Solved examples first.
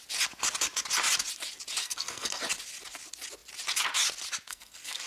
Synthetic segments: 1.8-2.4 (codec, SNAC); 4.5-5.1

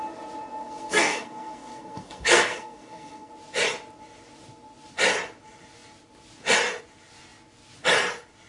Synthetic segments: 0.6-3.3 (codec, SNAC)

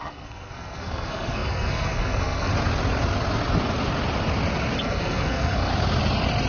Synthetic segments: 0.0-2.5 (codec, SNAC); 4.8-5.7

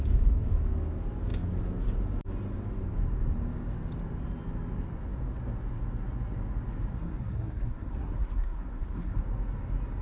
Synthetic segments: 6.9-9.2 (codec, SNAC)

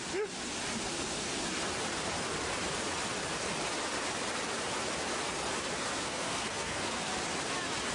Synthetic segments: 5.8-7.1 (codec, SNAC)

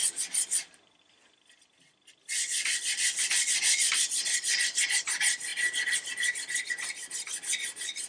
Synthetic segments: none

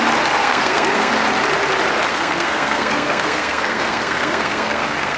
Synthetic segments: 0.4-1.1 (codec, SNAC); 2.1-5.2